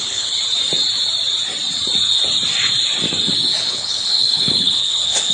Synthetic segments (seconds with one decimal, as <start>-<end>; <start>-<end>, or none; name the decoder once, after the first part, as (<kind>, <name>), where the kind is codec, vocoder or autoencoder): 0.0-0.4 (codec, HILCodec); 3.6-5.3